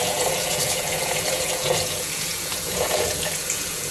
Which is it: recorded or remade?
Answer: remade